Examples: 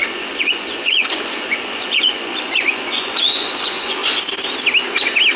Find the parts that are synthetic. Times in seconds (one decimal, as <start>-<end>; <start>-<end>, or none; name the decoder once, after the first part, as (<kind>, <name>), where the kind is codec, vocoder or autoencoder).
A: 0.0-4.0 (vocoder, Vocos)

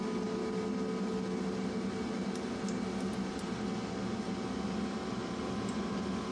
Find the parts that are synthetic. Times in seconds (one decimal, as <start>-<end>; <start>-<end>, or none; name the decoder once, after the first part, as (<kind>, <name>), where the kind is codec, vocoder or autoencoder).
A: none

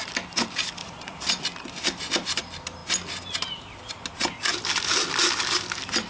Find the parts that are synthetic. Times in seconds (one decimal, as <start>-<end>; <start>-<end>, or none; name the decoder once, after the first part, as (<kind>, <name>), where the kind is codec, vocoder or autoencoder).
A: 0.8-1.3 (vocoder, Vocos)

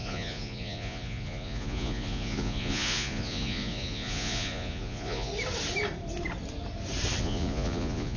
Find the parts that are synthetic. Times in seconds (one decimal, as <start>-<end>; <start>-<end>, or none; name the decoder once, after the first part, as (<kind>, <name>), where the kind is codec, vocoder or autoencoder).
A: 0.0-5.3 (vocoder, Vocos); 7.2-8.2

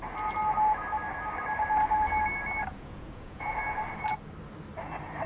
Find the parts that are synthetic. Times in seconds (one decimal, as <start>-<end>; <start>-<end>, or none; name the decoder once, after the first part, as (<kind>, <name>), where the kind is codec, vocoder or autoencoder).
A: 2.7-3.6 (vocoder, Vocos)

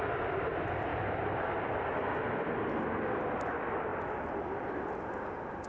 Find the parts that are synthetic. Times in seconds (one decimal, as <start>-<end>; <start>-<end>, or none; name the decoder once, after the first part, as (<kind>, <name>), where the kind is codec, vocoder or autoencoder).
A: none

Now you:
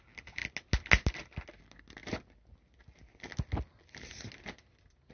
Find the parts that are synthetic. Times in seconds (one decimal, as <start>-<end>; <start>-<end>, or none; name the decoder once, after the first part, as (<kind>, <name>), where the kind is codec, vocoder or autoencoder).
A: none